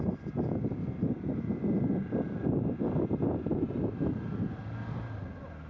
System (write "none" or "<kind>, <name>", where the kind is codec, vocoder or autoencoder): none